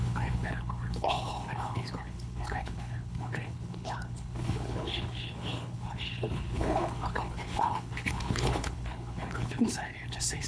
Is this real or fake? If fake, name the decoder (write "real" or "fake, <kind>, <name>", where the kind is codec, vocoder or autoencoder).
fake, codec, HILCodec